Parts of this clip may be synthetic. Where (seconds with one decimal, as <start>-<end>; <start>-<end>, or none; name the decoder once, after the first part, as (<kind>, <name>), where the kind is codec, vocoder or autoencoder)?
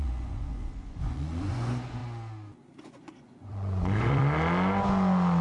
0.0-2.0 (vocoder, Vocos); 2.8-4.2